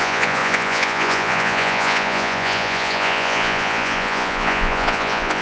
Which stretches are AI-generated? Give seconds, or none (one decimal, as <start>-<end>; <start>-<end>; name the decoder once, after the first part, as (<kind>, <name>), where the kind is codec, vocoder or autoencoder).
0.0-5.4 (vocoder, Vocos)